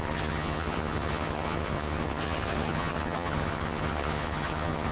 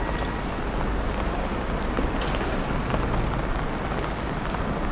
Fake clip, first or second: first